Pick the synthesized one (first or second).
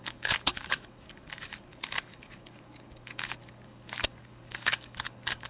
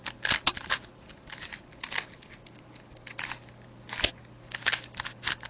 first